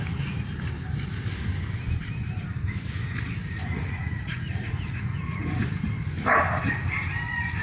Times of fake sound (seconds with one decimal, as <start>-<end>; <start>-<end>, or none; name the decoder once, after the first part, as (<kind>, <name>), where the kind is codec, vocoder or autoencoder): 3.4-5.4 (vocoder, Vocos)

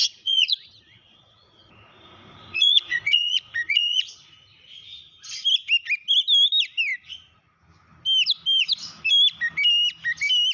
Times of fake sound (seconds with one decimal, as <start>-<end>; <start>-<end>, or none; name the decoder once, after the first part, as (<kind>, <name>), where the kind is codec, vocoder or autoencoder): 0.0-4.1 (vocoder, Vocos)

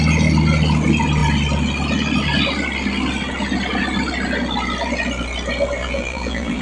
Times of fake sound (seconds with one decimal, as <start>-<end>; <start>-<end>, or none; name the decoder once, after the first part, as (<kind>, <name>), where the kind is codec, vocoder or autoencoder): 5.8-6.6 (vocoder, BigVGAN v2)

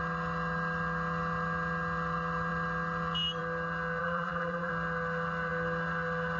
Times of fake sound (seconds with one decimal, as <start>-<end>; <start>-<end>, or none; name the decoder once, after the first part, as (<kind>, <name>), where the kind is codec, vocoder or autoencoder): 4.0-4.7 (vocoder, BigVGAN v2)